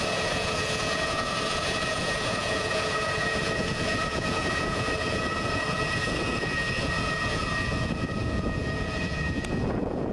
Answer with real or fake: fake